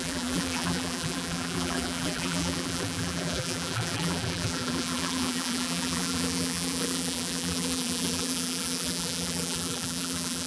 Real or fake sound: fake